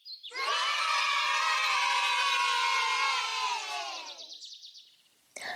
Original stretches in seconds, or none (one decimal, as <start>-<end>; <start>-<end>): 0.0-5.6